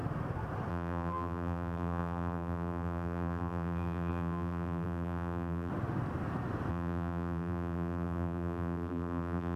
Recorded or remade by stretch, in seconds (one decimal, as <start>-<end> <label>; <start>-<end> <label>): 0.0-0.7 recorded; 0.7-5.7 remade; 5.7-6.7 recorded; 6.7-9.6 remade